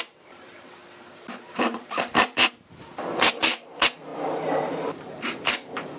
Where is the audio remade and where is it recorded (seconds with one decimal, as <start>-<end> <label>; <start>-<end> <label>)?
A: 0.0-0.8 remade; 0.8-1.5 recorded; 1.5-6.0 remade